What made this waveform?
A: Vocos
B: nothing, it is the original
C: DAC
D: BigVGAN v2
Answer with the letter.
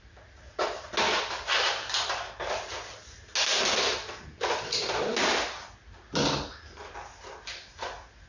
B